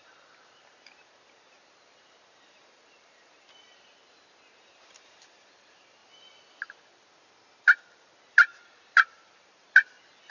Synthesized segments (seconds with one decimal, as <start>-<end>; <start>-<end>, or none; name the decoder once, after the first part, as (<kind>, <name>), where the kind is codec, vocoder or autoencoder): 0.0-6.0 (vocoder, BigVGAN v2); 6.8-10.3